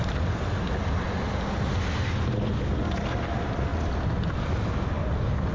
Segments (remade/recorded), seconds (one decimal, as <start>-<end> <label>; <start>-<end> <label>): 0.0-5.5 recorded